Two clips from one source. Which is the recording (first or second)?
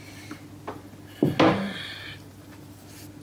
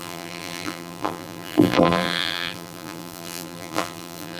first